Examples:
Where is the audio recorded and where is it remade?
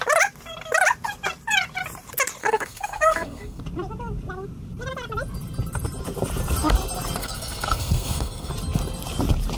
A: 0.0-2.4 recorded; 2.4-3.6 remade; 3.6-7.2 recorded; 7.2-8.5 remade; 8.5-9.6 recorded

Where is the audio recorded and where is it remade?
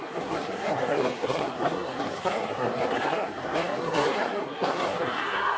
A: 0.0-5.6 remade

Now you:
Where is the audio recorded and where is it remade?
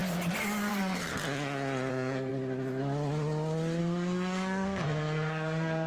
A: 0.0-0.7 recorded; 0.7-1.1 remade; 1.1-1.9 recorded; 1.9-2.3 remade; 2.3-3.8 recorded; 3.8-5.9 remade